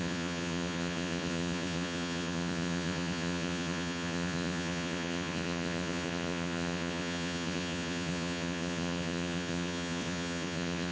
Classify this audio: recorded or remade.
remade